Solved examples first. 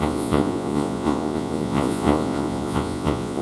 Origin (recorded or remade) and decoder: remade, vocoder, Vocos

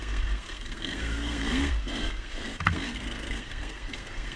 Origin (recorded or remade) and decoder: remade, codec, SNAC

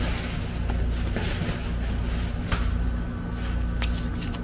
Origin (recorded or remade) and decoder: recorded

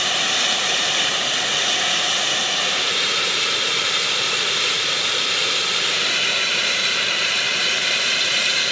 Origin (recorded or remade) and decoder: remade, vocoder, BigVGAN v2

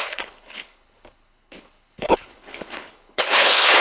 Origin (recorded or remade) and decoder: remade, codec, HILCodec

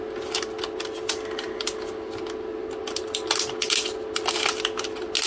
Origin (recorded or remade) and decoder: recorded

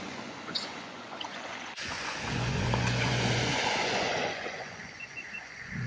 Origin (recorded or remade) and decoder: remade, vocoder, Vocos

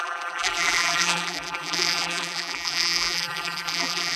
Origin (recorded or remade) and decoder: remade, vocoder, BigVGAN v2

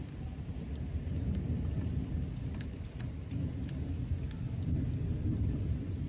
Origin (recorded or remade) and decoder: recorded